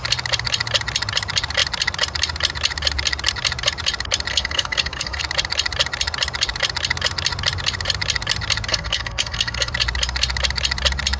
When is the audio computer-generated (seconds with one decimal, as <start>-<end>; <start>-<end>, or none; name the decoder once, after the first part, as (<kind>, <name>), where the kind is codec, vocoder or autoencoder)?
4.3-5.2 (codec, SNAC); 8.7-9.7